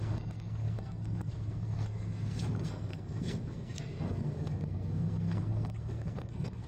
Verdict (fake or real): fake